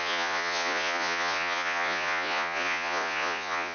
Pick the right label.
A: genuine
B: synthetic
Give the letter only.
B